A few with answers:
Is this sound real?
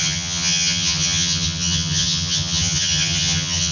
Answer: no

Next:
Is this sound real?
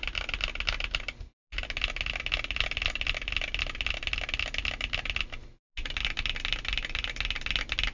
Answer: yes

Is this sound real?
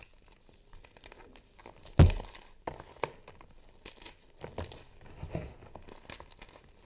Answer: yes